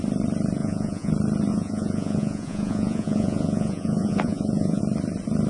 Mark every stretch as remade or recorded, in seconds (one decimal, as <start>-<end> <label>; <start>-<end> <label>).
0.0-0.6 recorded; 0.6-1.1 remade; 1.1-1.5 recorded; 1.5-4.8 remade; 4.8-5.5 recorded